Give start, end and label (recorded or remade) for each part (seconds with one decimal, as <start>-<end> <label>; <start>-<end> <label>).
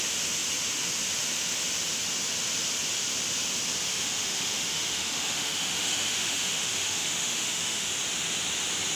0.0-3.9 recorded; 3.9-7.9 remade; 7.9-9.0 recorded